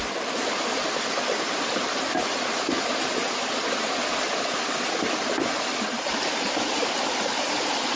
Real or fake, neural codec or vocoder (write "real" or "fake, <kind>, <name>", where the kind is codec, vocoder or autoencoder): real